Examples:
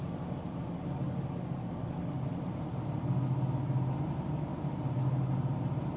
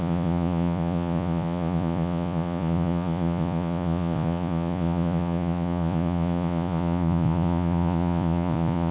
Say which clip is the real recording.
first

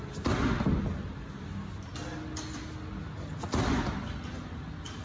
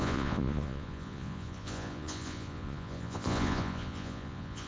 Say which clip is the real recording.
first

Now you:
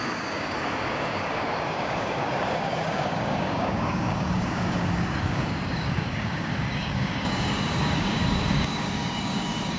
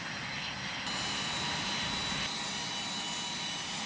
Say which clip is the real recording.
second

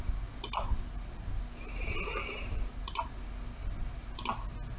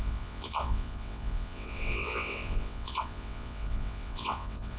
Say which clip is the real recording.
first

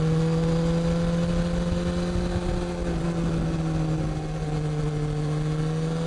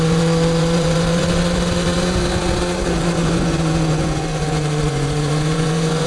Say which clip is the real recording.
first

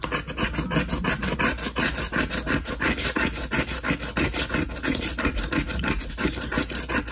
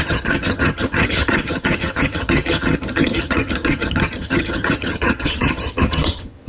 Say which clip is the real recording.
first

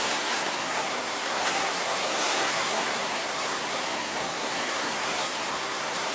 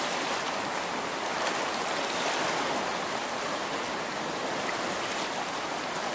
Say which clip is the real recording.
second